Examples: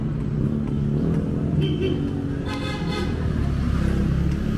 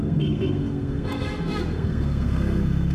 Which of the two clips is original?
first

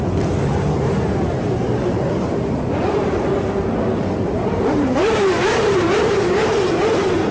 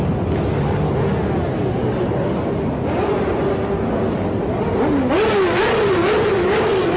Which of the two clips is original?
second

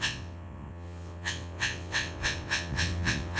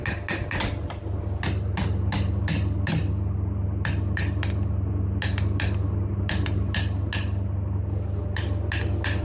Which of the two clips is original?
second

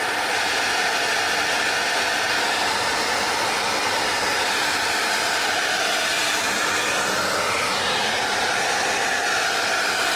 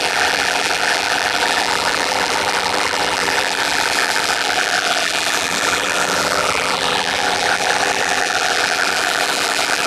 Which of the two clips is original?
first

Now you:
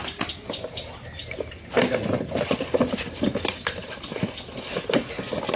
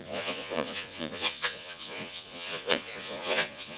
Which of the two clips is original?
first